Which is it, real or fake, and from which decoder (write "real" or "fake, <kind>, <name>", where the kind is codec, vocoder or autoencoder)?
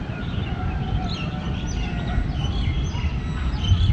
real